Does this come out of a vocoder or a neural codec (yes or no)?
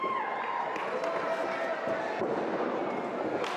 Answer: no